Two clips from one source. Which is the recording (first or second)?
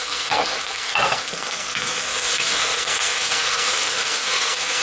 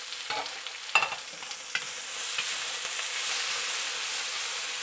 second